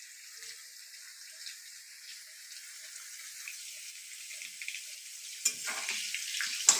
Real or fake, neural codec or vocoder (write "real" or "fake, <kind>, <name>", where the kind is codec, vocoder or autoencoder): real